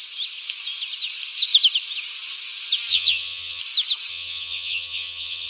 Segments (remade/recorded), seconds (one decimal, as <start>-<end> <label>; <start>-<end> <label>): 0.0-2.9 recorded; 2.9-3.6 remade; 3.6-4.1 recorded; 4.1-5.5 remade